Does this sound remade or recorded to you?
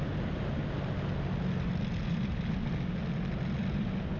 recorded